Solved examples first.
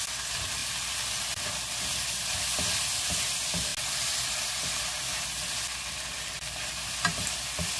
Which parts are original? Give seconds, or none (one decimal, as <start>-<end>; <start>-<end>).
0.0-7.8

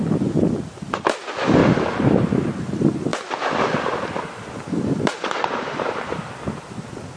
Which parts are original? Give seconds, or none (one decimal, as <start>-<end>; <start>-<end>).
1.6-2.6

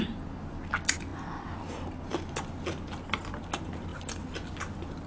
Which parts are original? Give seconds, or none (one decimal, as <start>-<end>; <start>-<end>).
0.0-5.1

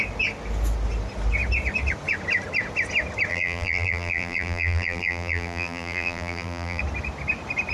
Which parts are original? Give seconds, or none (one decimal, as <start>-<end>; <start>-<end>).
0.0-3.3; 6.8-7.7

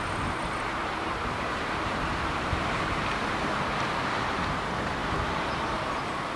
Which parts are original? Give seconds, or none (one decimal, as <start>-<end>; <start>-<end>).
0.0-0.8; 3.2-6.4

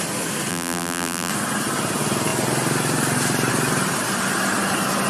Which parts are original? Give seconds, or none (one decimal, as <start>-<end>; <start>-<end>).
0.0-0.5; 1.3-5.1